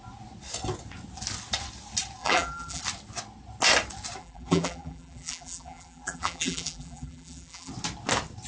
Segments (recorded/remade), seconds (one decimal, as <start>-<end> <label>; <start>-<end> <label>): 0.0-2.2 recorded; 2.2-2.8 remade; 2.8-4.2 recorded; 4.2-7.7 remade; 7.7-8.5 recorded